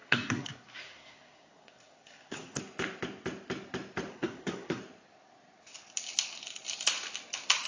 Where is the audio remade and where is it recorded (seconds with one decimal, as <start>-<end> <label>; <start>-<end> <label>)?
0.0-2.6 remade; 2.6-4.1 recorded; 4.1-4.8 remade; 4.8-7.7 recorded